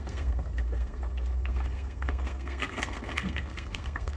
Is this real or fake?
fake